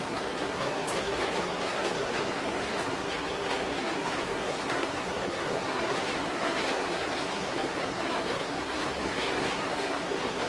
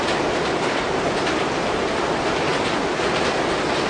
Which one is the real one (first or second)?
second